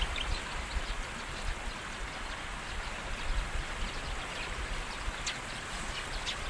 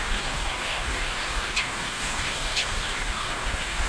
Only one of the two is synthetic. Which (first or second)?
second